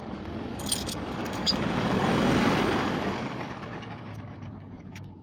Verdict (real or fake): fake